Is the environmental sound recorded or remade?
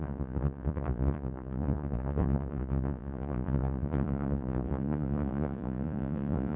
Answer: remade